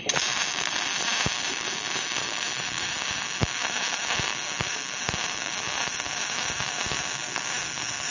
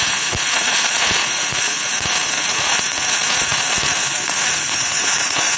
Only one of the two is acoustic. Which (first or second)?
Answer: first